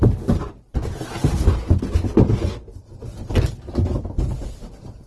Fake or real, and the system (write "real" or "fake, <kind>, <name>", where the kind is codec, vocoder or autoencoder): real